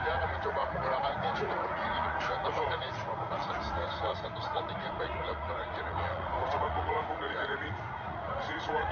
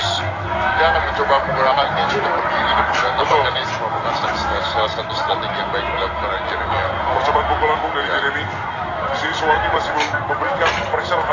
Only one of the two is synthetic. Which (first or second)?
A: first